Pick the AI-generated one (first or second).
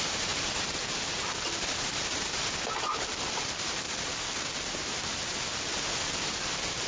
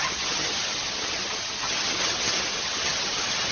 second